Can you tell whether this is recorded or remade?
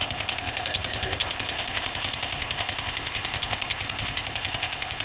remade